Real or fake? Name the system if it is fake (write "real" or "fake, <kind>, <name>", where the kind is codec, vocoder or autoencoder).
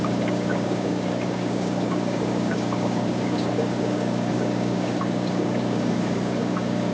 fake, codec, DAC